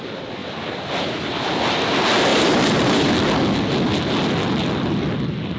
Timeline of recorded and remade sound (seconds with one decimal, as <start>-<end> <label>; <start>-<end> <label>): 0.0-2.3 recorded; 2.3-3.1 remade; 3.1-5.6 recorded